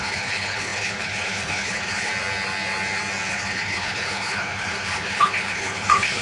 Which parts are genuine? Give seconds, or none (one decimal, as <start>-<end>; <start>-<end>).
2.1-3.3